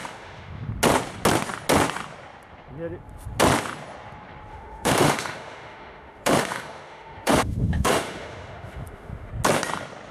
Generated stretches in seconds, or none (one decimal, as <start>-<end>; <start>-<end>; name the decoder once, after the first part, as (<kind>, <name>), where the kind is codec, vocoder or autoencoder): 0.0-0.7 (autoencoder, DAC-VAE); 4.5-9.3